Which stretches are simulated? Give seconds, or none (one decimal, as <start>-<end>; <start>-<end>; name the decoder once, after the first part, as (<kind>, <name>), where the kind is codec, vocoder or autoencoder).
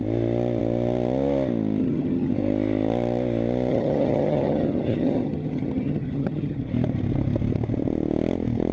1.8-2.3 (vocoder, HiFi-GAN); 3.7-6.6